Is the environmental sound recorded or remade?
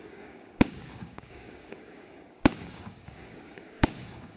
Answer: remade